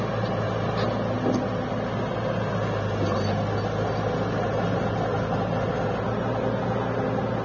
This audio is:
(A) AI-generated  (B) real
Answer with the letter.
B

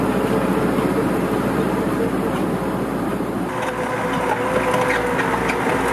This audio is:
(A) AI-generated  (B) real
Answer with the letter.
B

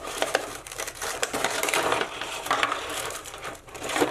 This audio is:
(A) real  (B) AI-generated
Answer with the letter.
B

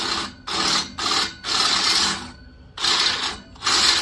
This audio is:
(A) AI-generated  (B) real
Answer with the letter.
B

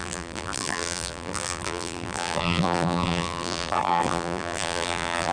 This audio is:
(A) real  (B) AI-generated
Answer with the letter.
B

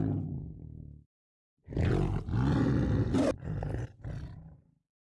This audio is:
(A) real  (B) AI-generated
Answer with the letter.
A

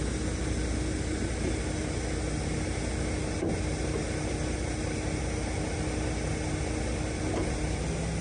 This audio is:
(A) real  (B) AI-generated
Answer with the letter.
A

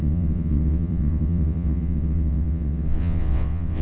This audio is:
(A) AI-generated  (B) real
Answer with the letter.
A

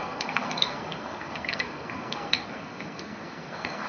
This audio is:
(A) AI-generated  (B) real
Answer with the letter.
A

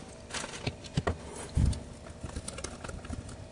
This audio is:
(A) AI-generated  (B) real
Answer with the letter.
B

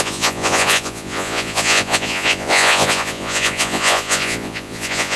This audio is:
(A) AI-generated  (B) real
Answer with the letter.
A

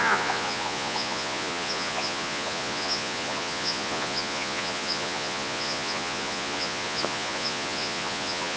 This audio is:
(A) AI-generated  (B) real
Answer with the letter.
A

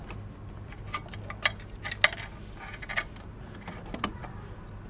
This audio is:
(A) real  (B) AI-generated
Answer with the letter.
A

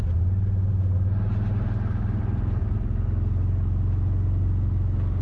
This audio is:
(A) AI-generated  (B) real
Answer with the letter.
B